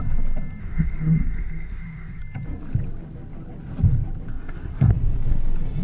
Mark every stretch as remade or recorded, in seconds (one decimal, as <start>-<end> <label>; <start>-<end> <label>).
0.0-0.6 recorded; 0.6-2.2 remade; 2.2-4.3 recorded; 4.3-4.9 remade; 4.9-5.8 recorded